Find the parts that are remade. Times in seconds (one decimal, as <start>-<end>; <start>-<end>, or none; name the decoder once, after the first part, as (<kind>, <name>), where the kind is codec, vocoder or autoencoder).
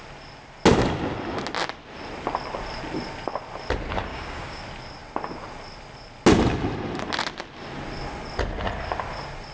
4.1-4.6 (codec, DAC)